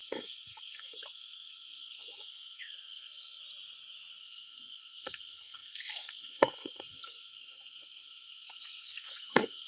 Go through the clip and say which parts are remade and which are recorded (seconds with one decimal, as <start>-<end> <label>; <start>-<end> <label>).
0.0-3.4 remade; 3.4-4.2 recorded; 4.2-9.7 remade